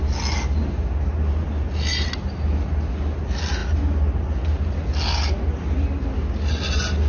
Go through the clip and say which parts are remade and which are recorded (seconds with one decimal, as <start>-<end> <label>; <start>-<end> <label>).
0.0-7.1 recorded